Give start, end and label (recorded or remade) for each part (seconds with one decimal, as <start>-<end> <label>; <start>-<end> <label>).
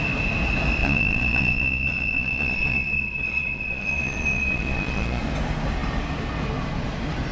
0.0-0.8 recorded; 0.8-5.2 remade; 5.2-7.3 recorded